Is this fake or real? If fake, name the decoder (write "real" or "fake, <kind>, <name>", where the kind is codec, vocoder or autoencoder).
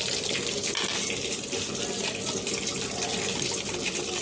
real